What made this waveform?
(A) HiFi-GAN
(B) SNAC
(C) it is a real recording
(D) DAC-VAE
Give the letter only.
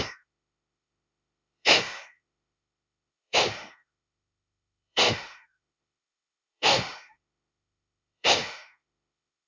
D